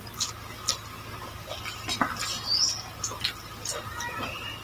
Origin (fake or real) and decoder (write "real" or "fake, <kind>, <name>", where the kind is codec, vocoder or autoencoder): real